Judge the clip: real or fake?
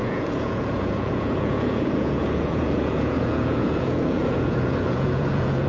fake